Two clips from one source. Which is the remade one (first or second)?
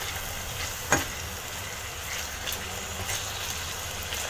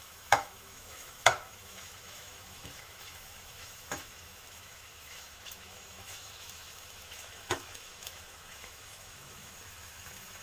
second